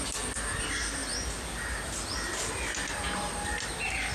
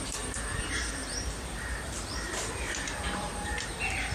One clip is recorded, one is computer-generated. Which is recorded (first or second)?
first